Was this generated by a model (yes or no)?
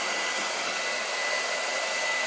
no